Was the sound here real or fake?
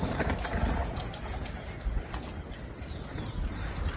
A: real